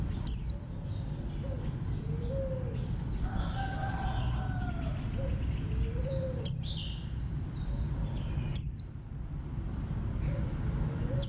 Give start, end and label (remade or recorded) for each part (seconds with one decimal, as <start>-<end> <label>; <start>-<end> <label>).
0.0-5.9 recorded; 5.9-8.2 remade; 8.2-11.3 recorded